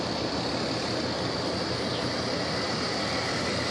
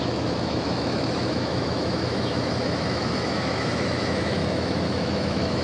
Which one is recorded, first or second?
first